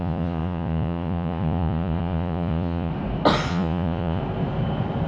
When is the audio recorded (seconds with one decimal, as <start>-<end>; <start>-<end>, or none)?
2.9-3.5; 4.2-5.1